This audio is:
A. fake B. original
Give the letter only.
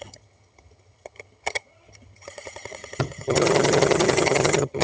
A